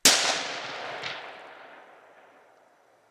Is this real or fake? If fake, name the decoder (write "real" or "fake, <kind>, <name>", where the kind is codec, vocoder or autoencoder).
real